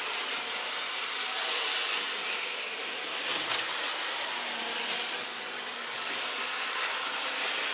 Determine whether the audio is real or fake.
real